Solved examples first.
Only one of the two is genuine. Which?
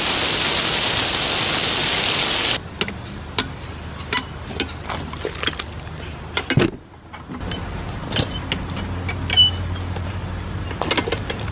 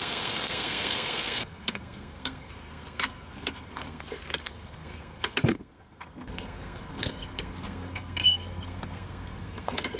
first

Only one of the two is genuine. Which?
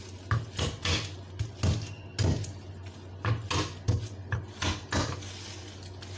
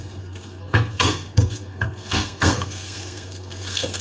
first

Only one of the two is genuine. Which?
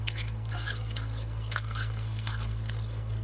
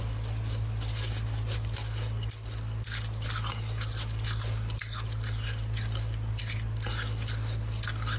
second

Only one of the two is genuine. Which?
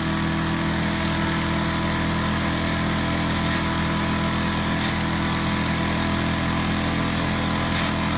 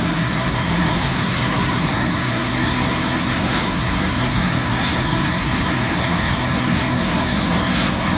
first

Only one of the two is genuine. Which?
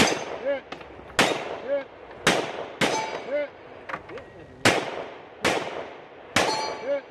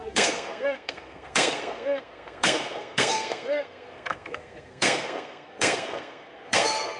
first